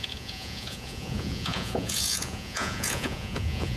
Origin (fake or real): fake